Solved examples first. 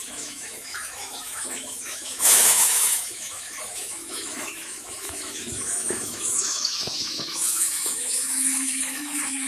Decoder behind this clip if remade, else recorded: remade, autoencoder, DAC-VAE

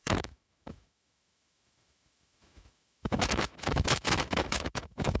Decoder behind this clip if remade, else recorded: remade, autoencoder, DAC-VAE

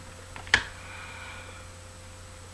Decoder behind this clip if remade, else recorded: recorded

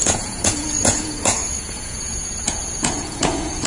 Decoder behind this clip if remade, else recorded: remade, vocoder, Vocos